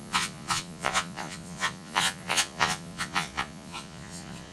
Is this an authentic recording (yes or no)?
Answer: no